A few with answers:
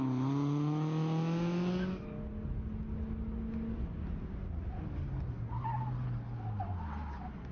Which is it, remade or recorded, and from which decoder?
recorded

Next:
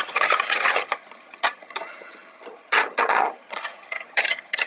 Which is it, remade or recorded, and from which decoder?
remade, vocoder, HiFi-GAN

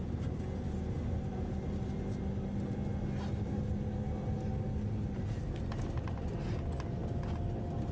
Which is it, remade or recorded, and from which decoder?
recorded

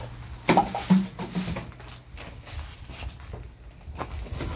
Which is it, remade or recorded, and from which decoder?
recorded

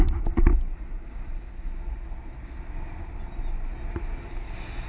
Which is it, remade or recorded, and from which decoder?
recorded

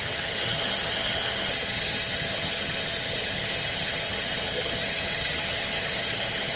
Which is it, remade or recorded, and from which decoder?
remade, vocoder, HiFi-GAN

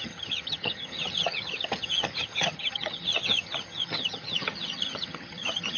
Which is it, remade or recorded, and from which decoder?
remade, vocoder, HiFi-GAN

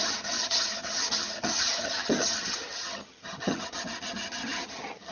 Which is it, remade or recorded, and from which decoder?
remade, vocoder, HiFi-GAN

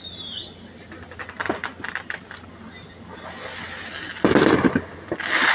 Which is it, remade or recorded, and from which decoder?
recorded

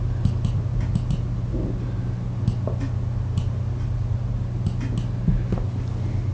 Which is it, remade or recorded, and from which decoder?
recorded